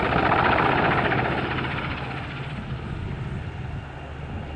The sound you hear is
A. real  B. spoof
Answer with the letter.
A